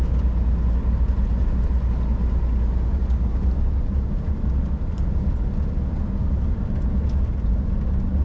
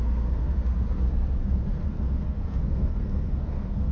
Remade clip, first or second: second